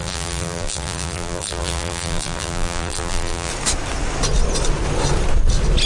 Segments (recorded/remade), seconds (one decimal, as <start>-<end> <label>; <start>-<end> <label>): 0.0-3.5 remade; 3.5-5.9 recorded